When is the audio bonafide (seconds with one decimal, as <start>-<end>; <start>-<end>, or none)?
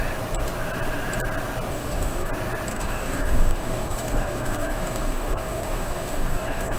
0.0-1.7; 2.3-2.7